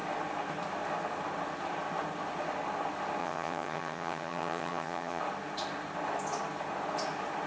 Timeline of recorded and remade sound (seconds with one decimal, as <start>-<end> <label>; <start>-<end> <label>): 0.0-3.2 recorded; 3.2-5.2 remade; 5.2-7.5 recorded